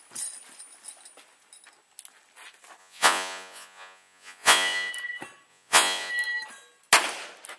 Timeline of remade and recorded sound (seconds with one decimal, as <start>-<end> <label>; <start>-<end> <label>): 0.0-2.8 recorded; 2.8-4.9 remade; 4.9-5.5 recorded; 5.5-6.1 remade; 6.1-7.6 recorded